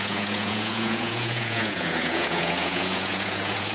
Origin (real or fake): fake